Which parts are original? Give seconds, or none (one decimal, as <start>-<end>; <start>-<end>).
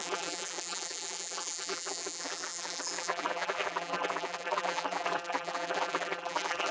none